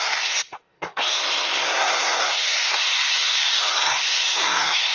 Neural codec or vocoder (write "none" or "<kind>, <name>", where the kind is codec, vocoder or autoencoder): codec, SNAC